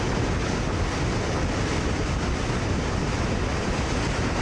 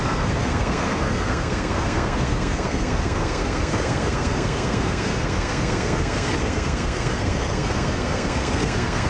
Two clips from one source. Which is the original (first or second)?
first